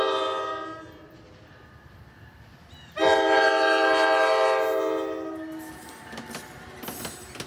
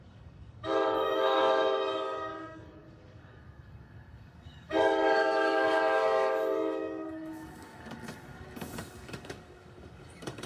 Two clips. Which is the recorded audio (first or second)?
first